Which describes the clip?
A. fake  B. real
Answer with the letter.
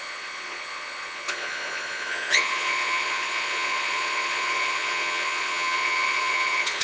A